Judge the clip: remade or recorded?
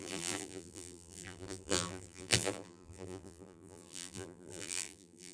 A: remade